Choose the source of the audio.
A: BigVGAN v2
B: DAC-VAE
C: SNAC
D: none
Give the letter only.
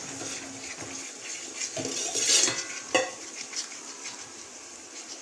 D